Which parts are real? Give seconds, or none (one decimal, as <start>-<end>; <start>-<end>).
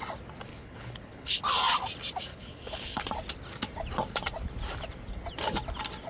0.0-0.5; 1.4-2.3; 3.0-6.1